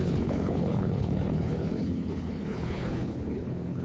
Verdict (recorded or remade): remade